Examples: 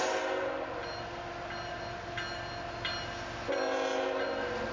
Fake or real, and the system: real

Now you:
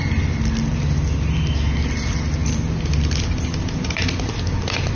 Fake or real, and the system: real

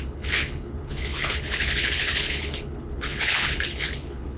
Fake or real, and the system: fake, codec, HILCodec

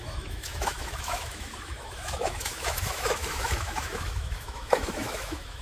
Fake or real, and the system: fake, autoencoder, DAC-VAE